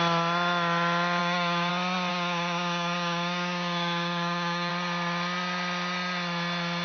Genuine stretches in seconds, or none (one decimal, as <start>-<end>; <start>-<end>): 0.0-1.2; 1.7-2.1; 4.7-6.8